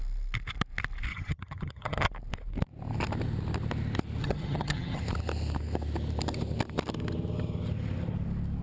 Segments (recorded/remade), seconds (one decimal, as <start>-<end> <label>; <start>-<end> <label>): 0.0-1.1 recorded; 1.1-2.1 remade; 2.1-4.2 recorded; 4.2-5.0 remade; 5.0-8.6 recorded